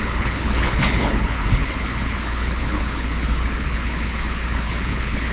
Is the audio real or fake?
fake